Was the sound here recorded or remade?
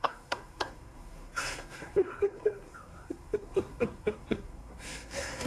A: remade